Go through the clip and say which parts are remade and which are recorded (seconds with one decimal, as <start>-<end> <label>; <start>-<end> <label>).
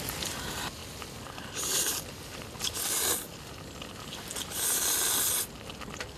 0.0-6.2 recorded